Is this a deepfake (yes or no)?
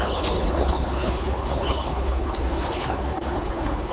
yes